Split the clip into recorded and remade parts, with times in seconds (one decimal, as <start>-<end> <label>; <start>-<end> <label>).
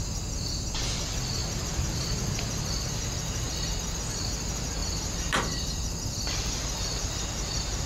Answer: 0.0-1.4 recorded; 1.4-3.5 remade; 3.5-4.8 recorded; 4.8-7.9 remade